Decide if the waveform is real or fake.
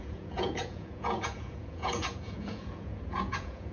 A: fake